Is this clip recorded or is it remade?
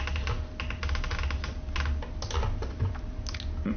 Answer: recorded